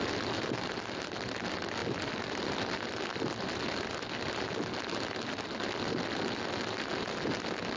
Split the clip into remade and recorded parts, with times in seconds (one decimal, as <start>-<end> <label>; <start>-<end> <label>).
0.0-7.8 recorded